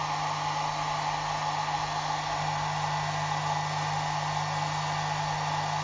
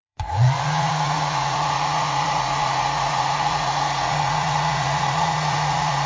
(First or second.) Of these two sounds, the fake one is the second